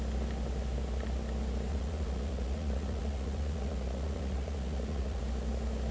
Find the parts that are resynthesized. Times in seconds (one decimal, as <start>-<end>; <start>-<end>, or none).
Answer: 1.7-5.2